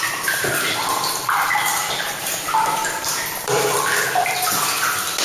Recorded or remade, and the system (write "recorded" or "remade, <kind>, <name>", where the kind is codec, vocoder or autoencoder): remade, vocoder, BigVGAN v2